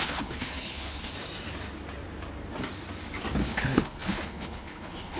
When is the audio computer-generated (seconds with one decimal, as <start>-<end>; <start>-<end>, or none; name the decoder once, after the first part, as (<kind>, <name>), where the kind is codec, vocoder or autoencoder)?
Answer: 0.0-1.1 (codec, HILCodec); 3.4-5.2